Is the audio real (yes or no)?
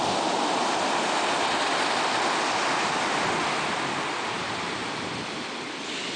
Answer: yes